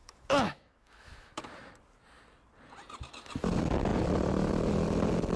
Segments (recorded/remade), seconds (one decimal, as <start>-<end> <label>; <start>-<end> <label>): 0.0-1.4 remade; 1.4-5.4 recorded